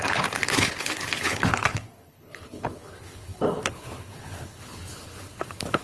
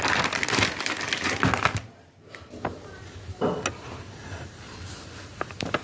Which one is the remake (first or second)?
first